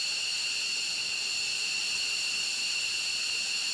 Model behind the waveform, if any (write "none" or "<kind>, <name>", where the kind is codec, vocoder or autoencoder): none